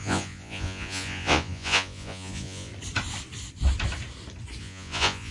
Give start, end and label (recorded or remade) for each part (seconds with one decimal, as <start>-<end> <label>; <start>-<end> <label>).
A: 0.0-2.7 remade; 2.7-4.6 recorded; 4.6-5.3 remade